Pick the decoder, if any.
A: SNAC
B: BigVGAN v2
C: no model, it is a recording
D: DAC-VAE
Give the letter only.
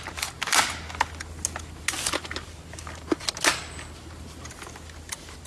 C